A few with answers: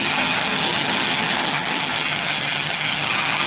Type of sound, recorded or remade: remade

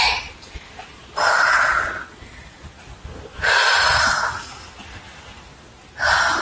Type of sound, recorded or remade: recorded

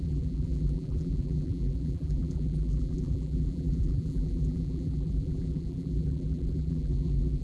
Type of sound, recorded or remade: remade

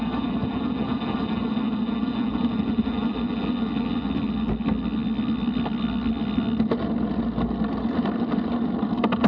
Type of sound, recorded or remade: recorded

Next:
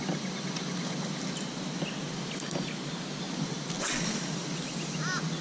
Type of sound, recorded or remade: recorded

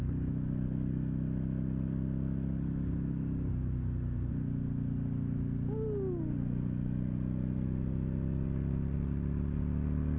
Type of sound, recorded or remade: recorded